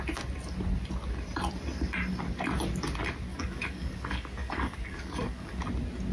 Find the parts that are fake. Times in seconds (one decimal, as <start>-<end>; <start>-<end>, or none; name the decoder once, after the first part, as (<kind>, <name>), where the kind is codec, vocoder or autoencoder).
3.3-5.6 (codec, DAC)

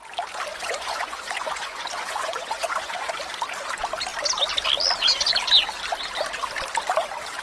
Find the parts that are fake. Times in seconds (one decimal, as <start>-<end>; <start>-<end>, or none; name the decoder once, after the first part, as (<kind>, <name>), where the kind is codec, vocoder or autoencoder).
0.5-3.2 (vocoder, Vocos)

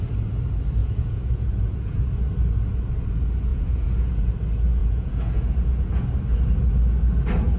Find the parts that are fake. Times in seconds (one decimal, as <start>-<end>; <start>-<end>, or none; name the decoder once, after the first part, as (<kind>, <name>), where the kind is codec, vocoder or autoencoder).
0.8-2.1 (vocoder, Vocos); 3.5-4.3; 4.8-6.0